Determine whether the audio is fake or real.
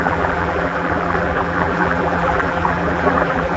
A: fake